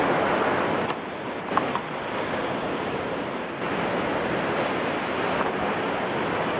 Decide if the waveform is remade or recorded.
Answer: recorded